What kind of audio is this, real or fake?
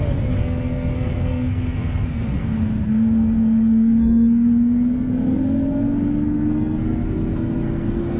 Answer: fake